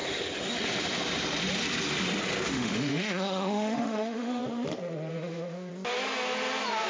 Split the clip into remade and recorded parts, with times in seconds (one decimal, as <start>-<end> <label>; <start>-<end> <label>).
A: 0.0-2.5 recorded; 2.5-4.4 remade; 4.4-5.1 recorded; 5.1-5.7 remade; 5.7-6.9 recorded